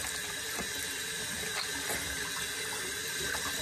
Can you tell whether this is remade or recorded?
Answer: remade